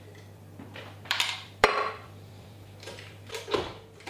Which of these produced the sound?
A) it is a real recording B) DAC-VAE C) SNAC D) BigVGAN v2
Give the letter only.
D